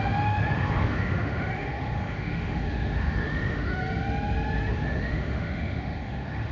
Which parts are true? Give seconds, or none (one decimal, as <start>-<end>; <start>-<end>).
3.8-4.7